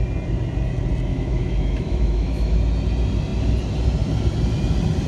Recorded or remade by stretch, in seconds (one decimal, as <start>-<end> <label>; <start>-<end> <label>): 0.0-1.1 recorded; 1.1-2.6 remade; 2.6-5.1 recorded